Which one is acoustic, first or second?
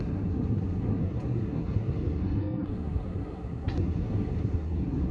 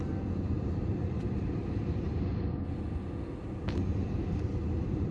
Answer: second